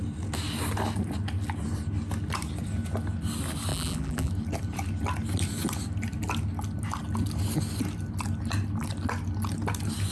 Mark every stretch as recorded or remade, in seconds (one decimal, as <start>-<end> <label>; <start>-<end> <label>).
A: 0.0-3.7 recorded; 3.7-4.3 remade; 4.3-10.1 recorded